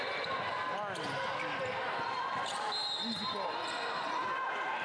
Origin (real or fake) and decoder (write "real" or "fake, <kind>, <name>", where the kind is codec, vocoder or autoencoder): real